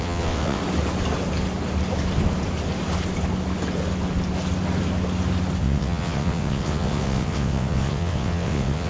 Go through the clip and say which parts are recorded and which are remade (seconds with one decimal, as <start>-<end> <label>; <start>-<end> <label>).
0.0-0.6 remade; 0.6-5.6 recorded; 5.6-8.9 remade